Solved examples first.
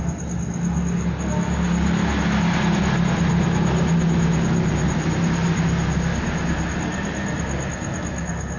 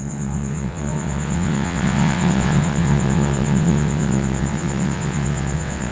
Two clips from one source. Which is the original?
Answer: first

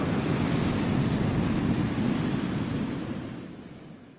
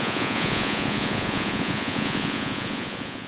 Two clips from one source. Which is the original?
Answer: first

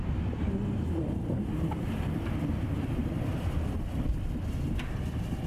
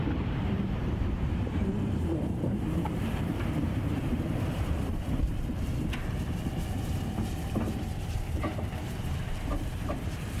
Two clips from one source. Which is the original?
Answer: first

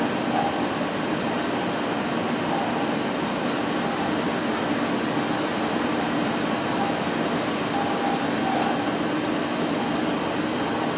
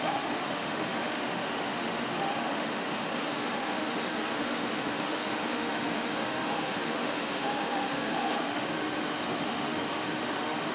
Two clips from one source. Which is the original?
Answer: first